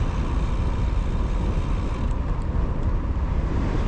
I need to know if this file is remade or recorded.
recorded